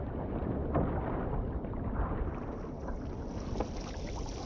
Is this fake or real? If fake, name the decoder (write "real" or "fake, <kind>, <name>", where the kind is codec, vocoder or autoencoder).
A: real